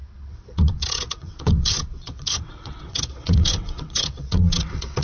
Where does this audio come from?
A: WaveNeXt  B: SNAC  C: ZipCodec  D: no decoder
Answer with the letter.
A